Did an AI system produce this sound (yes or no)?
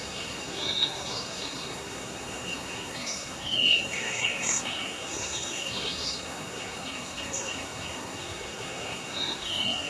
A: yes